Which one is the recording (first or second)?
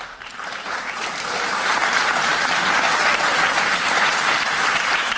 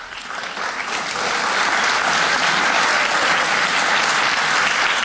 second